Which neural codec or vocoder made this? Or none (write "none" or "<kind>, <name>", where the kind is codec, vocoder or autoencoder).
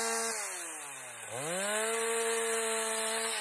none